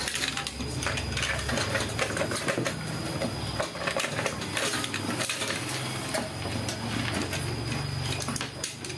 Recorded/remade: recorded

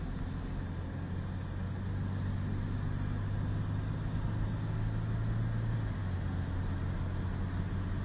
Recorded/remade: recorded